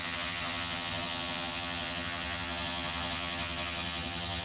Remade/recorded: remade